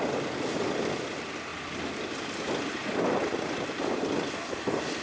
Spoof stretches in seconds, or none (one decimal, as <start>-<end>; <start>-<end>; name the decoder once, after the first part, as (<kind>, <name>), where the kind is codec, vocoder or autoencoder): none